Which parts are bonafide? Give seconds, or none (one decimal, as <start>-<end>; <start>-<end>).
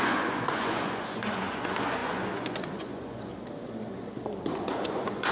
3.3-4.5